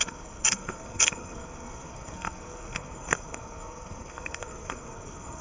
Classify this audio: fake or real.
fake